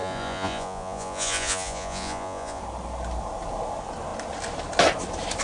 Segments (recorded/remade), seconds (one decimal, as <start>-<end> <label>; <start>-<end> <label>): 0.0-2.6 remade; 2.6-5.4 recorded